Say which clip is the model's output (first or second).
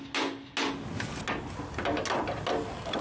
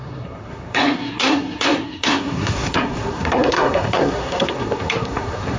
second